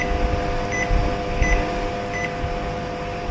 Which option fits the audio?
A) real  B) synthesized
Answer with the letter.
A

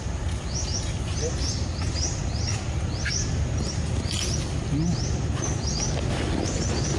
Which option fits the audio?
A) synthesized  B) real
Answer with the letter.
B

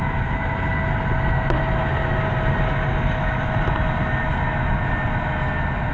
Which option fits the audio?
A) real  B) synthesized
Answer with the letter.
A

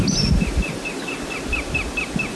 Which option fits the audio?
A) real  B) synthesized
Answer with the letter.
A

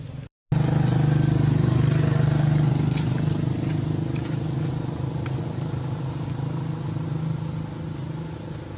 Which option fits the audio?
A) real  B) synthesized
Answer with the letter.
A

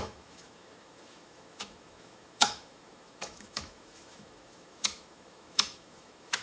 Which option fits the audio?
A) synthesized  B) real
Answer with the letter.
A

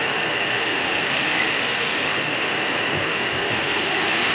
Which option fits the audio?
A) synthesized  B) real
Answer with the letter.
A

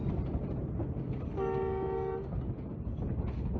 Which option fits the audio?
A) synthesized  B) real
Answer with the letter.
B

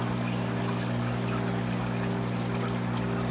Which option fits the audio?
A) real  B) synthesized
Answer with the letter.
A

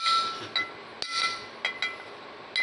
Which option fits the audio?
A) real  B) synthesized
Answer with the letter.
A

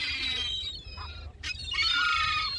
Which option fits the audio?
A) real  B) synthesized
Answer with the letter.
A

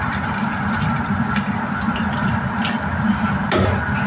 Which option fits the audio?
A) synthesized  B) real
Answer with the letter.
B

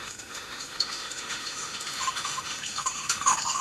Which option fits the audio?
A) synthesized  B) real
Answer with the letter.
A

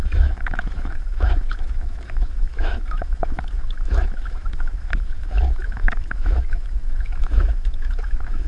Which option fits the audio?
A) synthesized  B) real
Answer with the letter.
A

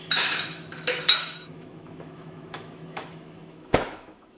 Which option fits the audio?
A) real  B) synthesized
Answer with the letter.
B